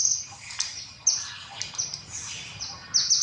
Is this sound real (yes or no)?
yes